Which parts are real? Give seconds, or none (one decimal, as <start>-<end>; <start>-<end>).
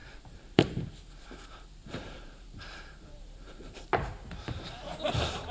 0.9-1.8; 5.1-5.5